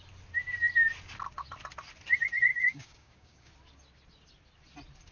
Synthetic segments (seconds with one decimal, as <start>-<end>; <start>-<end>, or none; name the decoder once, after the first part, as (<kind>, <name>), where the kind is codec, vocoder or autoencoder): 2.5-3.5 (codec, DAC)